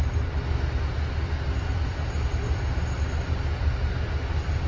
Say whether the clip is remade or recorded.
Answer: recorded